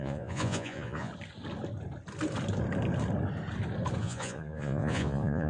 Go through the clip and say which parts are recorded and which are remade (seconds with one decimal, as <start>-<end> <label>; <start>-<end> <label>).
0.0-1.1 remade; 1.1-4.0 recorded; 4.0-5.5 remade